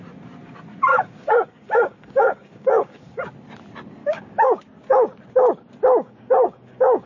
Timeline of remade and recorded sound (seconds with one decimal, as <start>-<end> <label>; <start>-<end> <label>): 0.0-0.9 recorded; 0.9-3.2 remade; 3.2-4.0 recorded; 4.0-4.6 remade; 4.6-6.0 recorded; 6.0-7.1 remade

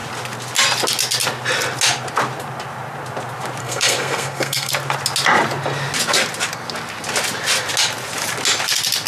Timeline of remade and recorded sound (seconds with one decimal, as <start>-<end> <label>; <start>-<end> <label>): 0.0-3.6 recorded; 3.6-4.7 remade; 4.7-9.1 recorded

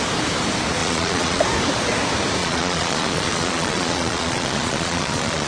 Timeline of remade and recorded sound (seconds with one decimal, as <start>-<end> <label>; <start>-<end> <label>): 0.0-0.8 recorded; 0.8-1.4 remade; 1.4-2.4 recorded; 2.4-5.5 remade

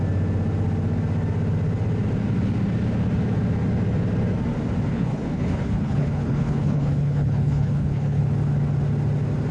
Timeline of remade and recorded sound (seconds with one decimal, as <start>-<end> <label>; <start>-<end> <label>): 0.0-4.9 recorded; 4.9-8.2 remade; 8.2-9.5 recorded

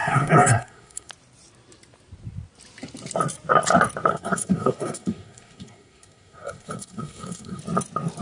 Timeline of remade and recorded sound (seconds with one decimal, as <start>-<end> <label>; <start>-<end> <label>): 0.0-1.1 remade; 1.1-4.1 recorded; 4.1-7.6 remade; 7.6-8.2 recorded

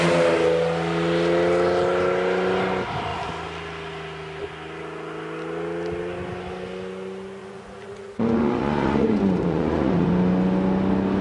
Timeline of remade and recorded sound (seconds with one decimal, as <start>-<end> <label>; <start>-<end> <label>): 0.0-7.4 recorded; 7.4-10.1 remade; 10.1-11.2 recorded

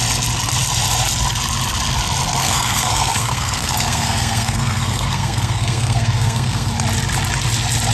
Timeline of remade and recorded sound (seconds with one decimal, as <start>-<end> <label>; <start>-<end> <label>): 0.0-2.4 recorded; 2.4-6.7 remade; 6.7-7.9 recorded